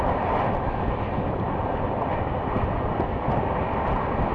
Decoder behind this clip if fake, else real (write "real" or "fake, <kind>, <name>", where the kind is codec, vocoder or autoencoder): real